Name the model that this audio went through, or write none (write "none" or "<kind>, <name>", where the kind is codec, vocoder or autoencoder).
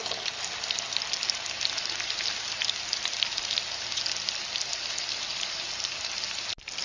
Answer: none